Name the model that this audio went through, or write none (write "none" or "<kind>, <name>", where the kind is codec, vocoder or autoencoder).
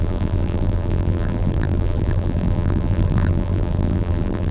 vocoder, BigVGAN v2